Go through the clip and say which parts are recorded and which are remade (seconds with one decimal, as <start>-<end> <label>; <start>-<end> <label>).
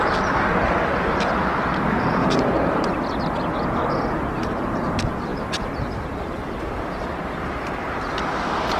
0.0-2.2 recorded; 2.2-2.9 remade; 2.9-5.3 recorded; 5.3-8.1 remade; 8.1-8.8 recorded